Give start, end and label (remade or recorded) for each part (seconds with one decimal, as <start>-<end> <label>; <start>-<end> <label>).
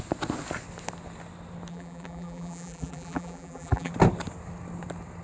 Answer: 0.0-1.7 recorded; 1.7-3.9 remade; 3.9-5.2 recorded